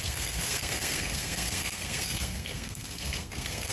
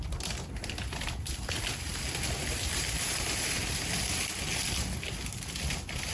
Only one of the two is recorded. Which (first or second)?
second